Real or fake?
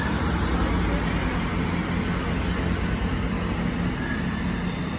real